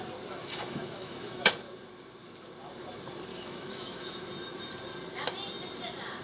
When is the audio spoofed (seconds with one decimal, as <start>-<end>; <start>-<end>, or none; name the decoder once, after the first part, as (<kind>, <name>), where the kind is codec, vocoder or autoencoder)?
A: 0.4-1.5 (autoencoder, DAC-VAE); 3.3-4.2